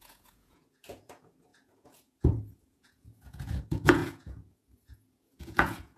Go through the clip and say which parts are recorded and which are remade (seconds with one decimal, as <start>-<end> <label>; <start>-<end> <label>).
0.0-6.0 remade